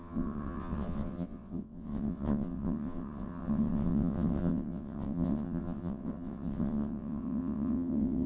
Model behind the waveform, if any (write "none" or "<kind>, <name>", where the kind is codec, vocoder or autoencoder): vocoder, WaveNeXt